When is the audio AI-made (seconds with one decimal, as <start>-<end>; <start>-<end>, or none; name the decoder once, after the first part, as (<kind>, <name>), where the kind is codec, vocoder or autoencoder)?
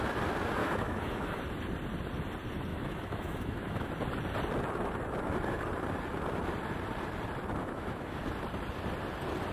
0.6-1.4 (autoencoder, DAC-VAE); 2.7-3.9; 7.6-8.2